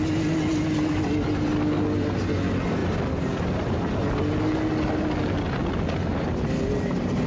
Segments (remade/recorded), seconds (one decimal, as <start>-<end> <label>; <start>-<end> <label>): 0.0-7.3 recorded